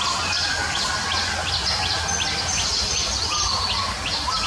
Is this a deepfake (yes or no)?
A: no